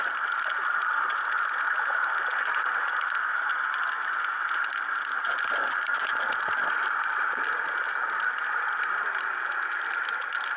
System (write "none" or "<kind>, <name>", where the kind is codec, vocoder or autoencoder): none